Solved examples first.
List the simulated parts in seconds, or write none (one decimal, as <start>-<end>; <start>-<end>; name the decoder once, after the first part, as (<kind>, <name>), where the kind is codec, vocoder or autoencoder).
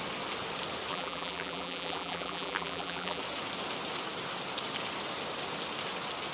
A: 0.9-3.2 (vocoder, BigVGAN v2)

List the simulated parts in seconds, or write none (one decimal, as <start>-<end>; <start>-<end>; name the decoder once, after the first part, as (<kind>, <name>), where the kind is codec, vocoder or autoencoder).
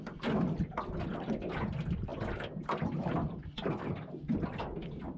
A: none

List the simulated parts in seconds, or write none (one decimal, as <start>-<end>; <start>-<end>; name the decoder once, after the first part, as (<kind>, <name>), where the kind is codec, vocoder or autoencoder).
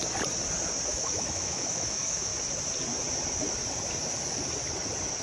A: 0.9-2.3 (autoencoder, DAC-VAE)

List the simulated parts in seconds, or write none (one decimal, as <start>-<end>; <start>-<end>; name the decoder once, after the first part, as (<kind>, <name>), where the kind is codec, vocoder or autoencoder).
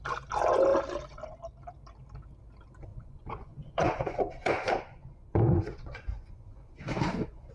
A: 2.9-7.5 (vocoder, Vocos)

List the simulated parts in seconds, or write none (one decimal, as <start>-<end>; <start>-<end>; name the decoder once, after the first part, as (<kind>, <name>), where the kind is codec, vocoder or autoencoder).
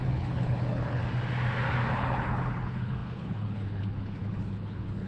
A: 0.0-1.0 (codec, HILCodec); 1.9-5.1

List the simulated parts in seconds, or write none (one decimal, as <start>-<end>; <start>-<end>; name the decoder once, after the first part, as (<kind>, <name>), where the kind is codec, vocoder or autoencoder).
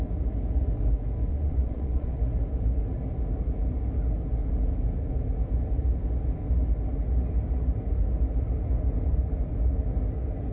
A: 1.3-2.2 (vocoder, Vocos)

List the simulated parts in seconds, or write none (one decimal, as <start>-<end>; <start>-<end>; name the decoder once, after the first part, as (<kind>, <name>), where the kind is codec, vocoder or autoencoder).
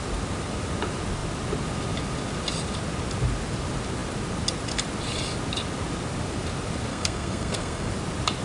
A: 6.9-7.9 (codec, SNAC)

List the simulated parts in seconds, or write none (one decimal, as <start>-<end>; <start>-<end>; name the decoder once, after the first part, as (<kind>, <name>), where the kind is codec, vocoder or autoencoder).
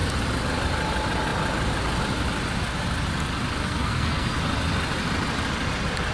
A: 3.6-4.4 (codec, SNAC)